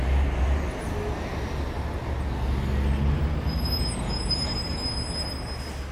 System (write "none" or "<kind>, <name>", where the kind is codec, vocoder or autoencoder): none